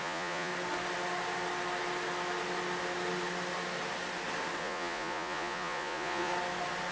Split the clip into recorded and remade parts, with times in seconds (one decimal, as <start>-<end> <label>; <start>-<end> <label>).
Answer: 0.0-0.5 remade; 0.5-4.6 recorded; 4.6-6.3 remade; 6.3-6.9 recorded